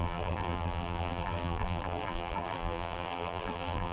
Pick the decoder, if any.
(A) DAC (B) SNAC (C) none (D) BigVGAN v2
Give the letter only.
D